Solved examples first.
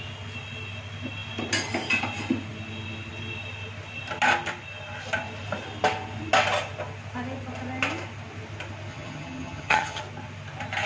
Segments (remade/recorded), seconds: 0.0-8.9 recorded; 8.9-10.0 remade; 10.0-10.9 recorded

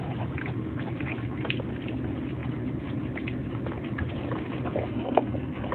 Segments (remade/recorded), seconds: 0.0-4.9 recorded; 4.9-5.7 remade